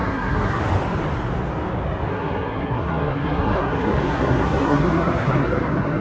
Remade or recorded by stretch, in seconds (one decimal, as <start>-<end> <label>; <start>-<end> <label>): 0.0-0.6 remade; 0.6-2.1 recorded; 2.1-6.0 remade